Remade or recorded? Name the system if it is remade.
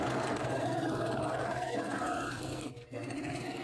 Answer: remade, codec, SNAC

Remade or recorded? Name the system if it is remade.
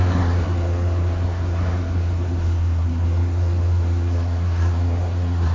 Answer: remade, codec, SNAC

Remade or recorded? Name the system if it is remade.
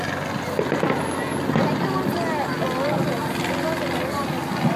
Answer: recorded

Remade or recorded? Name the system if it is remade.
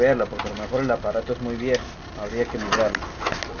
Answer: recorded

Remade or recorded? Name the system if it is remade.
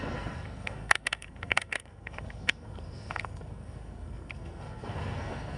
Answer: remade, codec, SNAC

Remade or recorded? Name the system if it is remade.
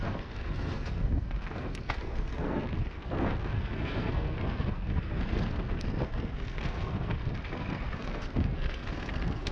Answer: remade, codec, SNAC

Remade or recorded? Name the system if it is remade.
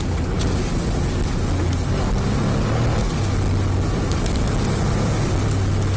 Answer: recorded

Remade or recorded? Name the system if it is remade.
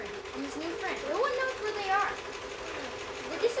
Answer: recorded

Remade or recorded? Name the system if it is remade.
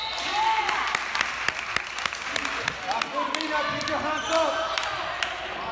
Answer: recorded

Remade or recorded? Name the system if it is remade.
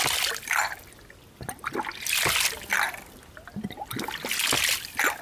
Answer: recorded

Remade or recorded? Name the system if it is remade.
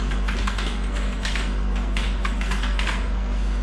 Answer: remade, codec, SNAC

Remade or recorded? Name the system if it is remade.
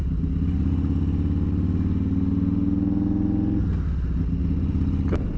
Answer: recorded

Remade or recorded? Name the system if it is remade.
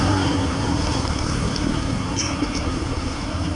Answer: remade, codec, SNAC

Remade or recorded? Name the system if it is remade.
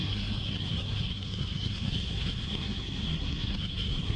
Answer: remade, codec, SNAC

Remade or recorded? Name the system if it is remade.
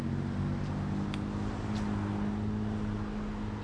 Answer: recorded